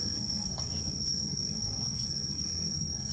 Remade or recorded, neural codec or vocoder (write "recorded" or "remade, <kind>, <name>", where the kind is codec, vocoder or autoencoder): remade, codec, SNAC